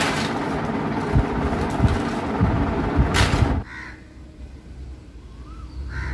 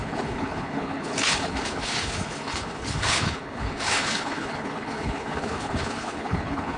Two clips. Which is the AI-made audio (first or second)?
second